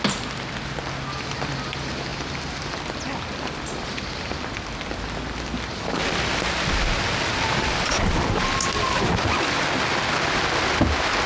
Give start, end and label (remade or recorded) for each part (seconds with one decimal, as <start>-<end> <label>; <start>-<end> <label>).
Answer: 0.0-11.3 recorded